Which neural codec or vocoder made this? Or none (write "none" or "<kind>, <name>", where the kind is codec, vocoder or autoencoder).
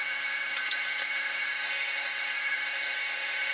codec, SNAC